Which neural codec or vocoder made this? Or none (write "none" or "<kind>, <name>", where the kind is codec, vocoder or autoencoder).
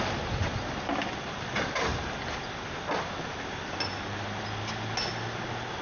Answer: none